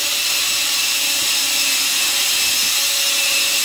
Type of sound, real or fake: real